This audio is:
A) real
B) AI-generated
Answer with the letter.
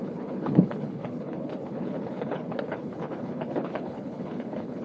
B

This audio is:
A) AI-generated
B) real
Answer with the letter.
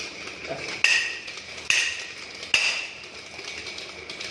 B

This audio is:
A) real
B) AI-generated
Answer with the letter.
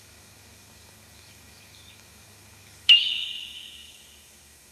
B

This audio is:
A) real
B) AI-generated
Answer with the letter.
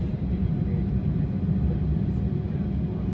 A